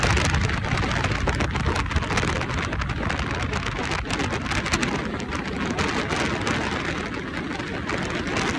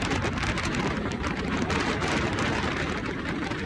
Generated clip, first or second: second